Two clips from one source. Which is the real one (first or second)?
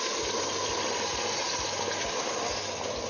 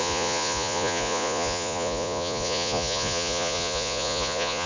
first